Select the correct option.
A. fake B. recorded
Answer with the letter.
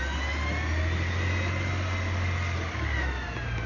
B